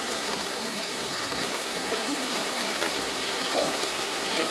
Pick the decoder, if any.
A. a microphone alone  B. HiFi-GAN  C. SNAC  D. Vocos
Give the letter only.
C